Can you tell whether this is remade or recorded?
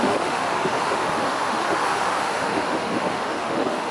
remade